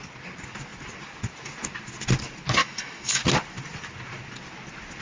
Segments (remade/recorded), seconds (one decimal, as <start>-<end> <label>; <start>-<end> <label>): 0.0-2.6 recorded; 2.6-3.2 remade; 3.2-5.0 recorded